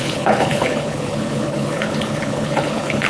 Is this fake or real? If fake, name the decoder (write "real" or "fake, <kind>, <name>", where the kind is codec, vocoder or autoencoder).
fake, codec, HILCodec